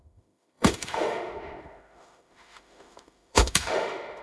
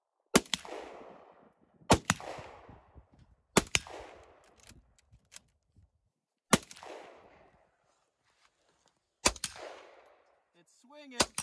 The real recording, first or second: second